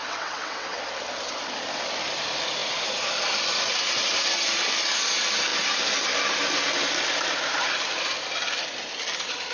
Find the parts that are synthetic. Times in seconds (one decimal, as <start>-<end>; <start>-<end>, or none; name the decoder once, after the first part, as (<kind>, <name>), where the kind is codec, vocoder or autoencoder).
0.0-0.8 (vocoder, WaveNeXt)

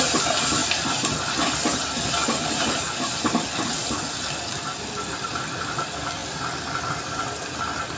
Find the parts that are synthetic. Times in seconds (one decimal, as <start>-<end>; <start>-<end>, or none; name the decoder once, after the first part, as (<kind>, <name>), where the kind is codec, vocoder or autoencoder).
none

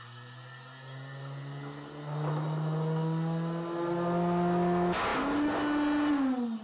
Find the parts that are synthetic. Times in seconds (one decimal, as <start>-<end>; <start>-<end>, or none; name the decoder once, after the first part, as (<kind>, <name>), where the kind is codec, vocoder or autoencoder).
none